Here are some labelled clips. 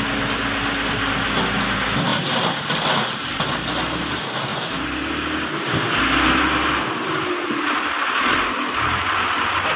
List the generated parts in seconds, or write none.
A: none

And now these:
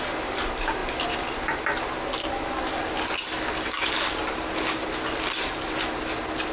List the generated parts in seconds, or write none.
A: none

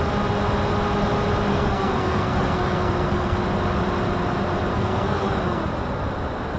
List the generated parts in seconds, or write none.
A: 1.5-3.4 (codec, SNAC); 4.7-5.6

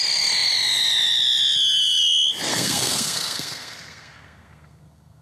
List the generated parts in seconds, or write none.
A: 2.5-5.2 (codec, SNAC)

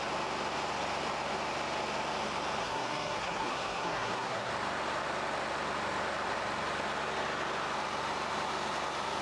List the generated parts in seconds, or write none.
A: 2.6-4.5 (codec, SNAC)